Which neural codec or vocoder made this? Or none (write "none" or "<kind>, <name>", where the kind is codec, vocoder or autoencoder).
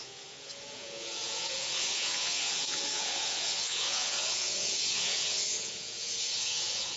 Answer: vocoder, Vocos